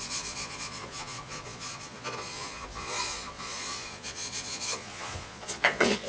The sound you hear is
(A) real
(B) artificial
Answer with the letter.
B